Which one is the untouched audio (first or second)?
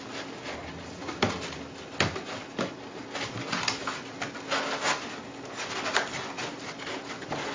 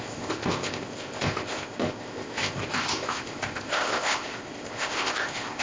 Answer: first